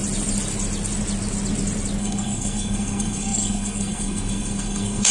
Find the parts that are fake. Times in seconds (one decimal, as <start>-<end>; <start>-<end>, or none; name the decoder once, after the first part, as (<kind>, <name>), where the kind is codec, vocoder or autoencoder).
2.0-5.1 (codec, SNAC)